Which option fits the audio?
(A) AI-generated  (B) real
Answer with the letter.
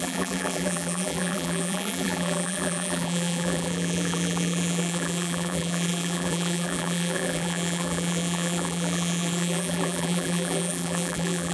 A